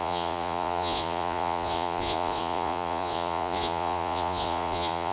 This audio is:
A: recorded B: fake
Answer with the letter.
B